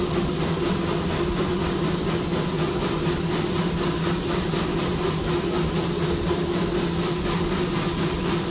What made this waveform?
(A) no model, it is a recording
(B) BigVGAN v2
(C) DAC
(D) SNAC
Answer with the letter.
A